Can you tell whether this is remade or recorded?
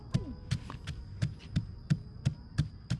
recorded